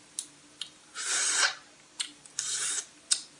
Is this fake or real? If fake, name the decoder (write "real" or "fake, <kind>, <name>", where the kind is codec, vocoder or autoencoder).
real